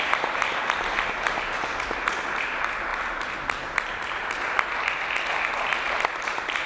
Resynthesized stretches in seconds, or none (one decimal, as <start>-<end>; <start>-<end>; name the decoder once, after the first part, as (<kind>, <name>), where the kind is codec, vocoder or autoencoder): none